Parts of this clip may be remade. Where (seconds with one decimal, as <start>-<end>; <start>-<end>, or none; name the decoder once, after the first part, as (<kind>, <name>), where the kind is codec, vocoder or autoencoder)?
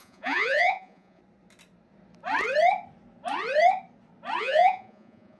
0.0-1.2 (vocoder, Vocos); 4.4-5.4